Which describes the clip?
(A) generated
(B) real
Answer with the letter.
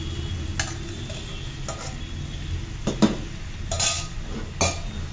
B